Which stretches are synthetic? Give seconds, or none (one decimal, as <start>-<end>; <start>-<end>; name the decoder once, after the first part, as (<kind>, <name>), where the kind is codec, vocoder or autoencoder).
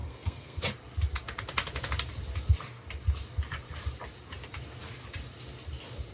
0.0-0.6 (codec, SNAC)